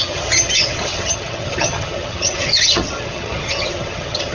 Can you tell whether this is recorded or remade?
remade